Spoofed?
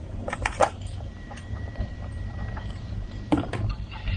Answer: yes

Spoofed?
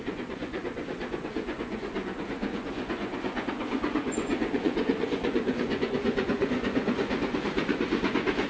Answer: yes